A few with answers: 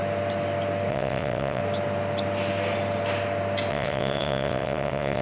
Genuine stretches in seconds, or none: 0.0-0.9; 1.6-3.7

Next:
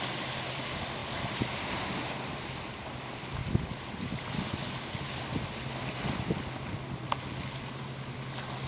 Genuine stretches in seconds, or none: 0.0-8.7